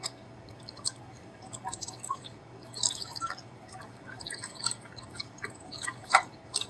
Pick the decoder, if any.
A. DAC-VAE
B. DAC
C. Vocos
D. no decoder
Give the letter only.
B